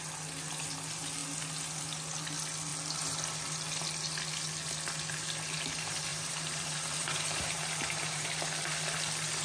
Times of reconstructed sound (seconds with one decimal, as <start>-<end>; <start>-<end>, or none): 6.1-8.3